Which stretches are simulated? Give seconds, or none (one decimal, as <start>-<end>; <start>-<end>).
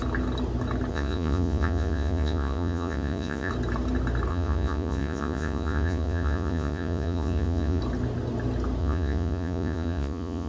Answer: 0.9-3.5; 4.3-7.8; 8.8-10.5